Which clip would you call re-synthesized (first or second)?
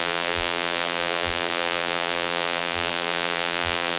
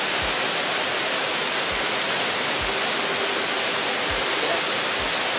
first